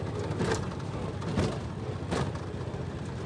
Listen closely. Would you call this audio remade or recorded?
recorded